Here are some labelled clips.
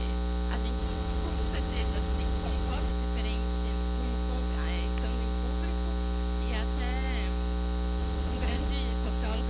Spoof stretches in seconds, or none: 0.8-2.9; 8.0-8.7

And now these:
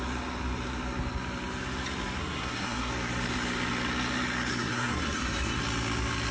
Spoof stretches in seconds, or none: 2.2-2.9; 4.5-5.6